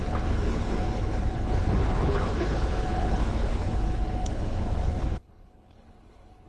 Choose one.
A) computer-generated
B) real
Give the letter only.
A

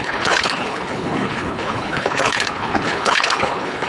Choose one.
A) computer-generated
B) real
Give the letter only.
A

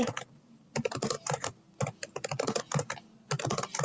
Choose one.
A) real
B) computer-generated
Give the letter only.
A